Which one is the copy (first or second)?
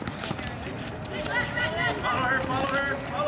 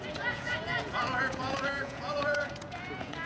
second